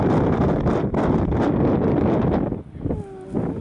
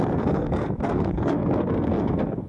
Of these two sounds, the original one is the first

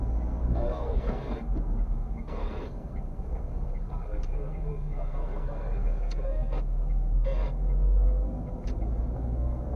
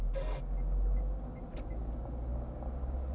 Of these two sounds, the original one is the second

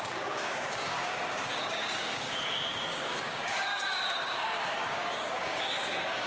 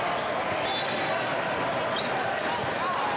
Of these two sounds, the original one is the second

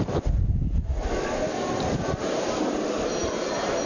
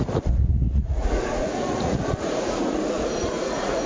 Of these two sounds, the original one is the first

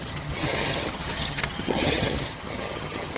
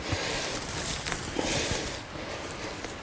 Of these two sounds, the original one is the second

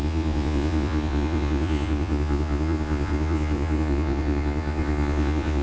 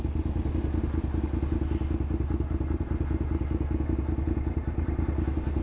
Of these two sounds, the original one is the second